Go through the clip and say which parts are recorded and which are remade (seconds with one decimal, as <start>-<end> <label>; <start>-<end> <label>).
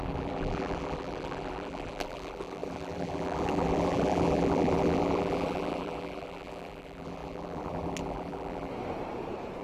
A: 0.0-8.7 remade; 8.7-9.6 recorded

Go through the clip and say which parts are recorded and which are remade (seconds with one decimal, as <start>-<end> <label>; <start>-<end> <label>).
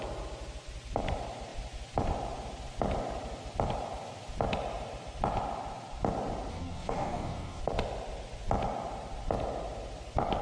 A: 0.0-6.5 recorded; 6.5-7.6 remade; 7.6-10.4 recorded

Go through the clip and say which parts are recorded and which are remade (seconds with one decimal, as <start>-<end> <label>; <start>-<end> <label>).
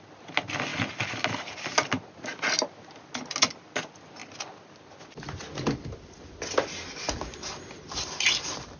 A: 0.0-8.8 recorded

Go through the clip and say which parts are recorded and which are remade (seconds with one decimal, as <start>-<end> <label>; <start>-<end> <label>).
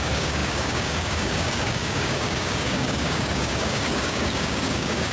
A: 0.0-5.1 remade